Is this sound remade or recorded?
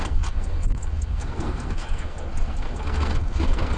remade